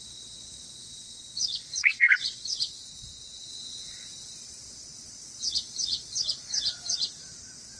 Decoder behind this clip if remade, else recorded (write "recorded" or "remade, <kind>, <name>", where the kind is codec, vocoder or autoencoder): remade, vocoder, Vocos